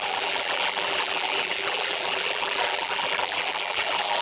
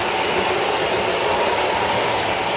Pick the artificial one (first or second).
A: first